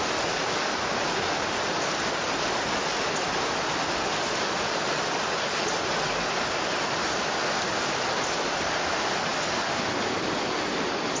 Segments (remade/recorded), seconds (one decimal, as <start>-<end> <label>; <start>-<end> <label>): 0.0-11.2 recorded